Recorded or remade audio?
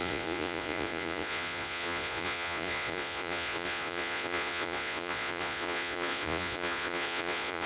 remade